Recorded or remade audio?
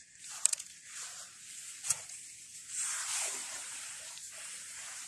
remade